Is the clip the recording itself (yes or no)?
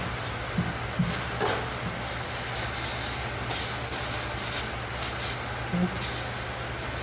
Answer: yes